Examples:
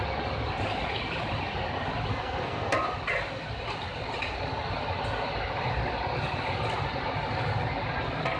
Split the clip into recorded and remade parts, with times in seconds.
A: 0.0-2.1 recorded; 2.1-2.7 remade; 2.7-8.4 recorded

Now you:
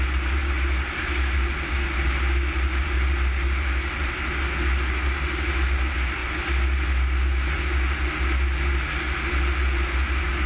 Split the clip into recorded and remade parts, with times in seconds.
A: 0.0-10.5 recorded

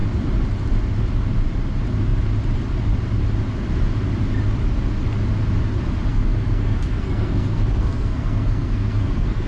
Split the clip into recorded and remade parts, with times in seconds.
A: 0.0-6.1 recorded; 6.1-9.5 remade

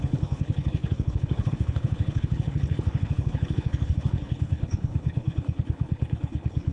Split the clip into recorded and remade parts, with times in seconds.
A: 0.0-6.7 remade

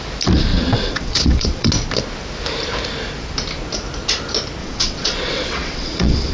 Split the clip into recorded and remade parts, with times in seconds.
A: 0.0-0.5 recorded; 0.5-1.7 remade; 1.7-4.6 recorded; 4.6-6.3 remade

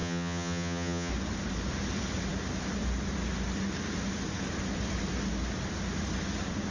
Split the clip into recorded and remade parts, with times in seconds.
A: 0.0-1.1 remade; 1.1-6.7 recorded